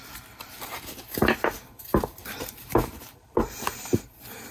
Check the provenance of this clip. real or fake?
fake